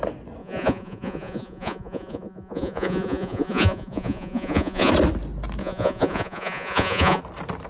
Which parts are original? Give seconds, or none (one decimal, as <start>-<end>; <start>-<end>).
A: 0.0-0.4; 4.9-5.6; 7.2-7.7